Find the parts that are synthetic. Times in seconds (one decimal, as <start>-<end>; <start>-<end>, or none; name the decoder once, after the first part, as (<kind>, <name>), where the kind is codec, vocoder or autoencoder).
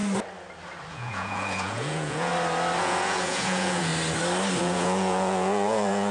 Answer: 0.9-2.3 (vocoder, Vocos); 2.8-3.9; 4.6-6.1